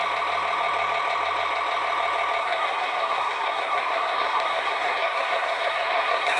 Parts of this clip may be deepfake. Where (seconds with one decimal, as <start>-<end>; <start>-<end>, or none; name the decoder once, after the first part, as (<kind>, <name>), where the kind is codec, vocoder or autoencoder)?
2.4-6.4 (codec, SNAC)